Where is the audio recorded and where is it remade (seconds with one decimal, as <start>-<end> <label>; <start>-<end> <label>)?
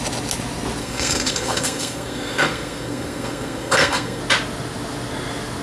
0.0-0.8 recorded; 0.8-4.2 remade; 4.2-5.6 recorded